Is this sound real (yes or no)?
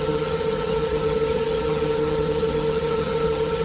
no